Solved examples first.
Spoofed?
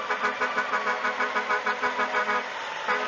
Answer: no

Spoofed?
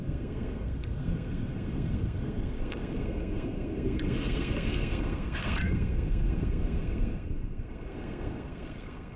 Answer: yes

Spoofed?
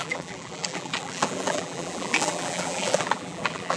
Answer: yes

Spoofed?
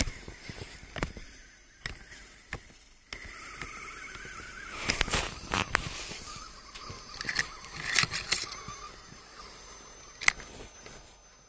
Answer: no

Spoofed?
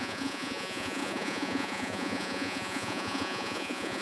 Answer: yes